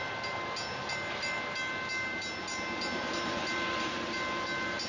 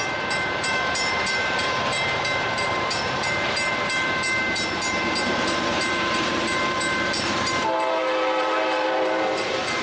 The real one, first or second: first